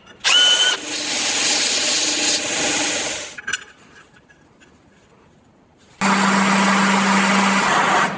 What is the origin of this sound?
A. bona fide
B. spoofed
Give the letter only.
A